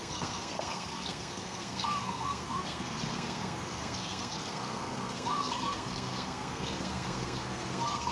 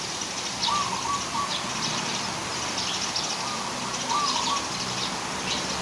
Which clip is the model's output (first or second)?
first